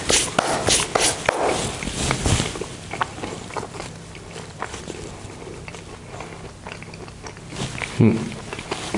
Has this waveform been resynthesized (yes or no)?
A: no